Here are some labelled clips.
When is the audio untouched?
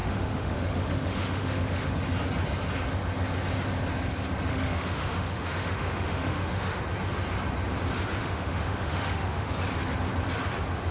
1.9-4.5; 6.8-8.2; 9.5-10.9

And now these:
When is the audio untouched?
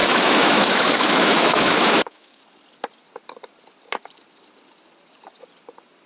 2.4-6.1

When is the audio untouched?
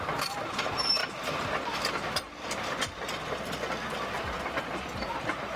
0.0-5.6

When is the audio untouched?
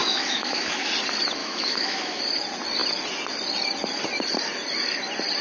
0.9-1.4; 2.2-5.4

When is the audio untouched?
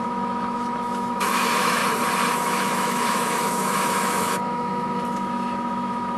1.8-2.3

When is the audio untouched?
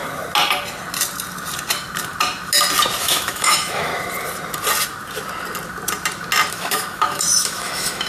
0.0-3.0; 3.9-6.5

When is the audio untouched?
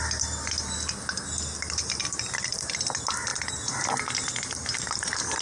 0.0-5.4